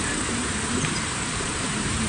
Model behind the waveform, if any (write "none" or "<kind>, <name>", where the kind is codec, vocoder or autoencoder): vocoder, BigVGAN v2